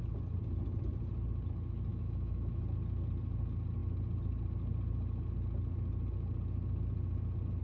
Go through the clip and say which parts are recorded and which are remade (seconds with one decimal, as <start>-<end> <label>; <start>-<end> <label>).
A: 0.0-1.9 recorded; 1.9-2.6 remade; 2.6-7.6 recorded